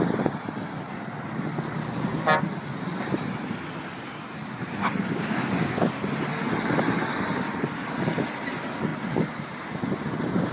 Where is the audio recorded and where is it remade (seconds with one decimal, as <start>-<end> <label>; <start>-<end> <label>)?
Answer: 0.0-5.0 recorded; 5.0-6.0 remade; 6.0-10.5 recorded